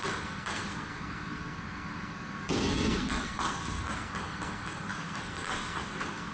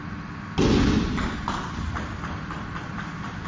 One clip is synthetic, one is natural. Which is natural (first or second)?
second